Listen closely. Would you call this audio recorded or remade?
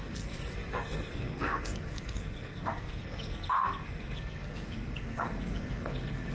remade